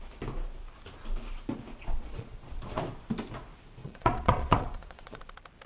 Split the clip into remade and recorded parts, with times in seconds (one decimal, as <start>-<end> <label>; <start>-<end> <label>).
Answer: 0.0-1.7 recorded; 1.7-2.8 remade; 2.8-3.8 recorded; 3.8-5.2 remade; 5.2-5.7 recorded